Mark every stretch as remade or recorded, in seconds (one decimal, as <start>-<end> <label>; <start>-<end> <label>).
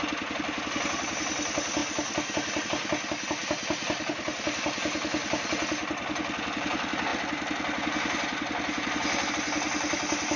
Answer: 0.0-10.4 recorded